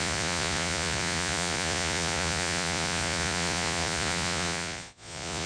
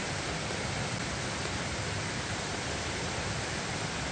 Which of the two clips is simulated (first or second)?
first